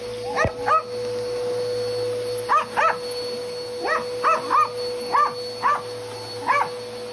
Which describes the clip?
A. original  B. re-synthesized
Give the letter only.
A